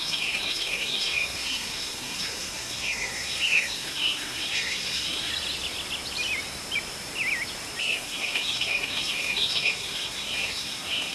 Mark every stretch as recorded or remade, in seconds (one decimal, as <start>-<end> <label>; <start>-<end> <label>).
0.0-5.3 remade; 5.3-7.8 recorded; 7.8-11.1 remade